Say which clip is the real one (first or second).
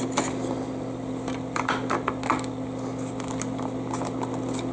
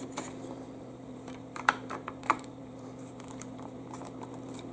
first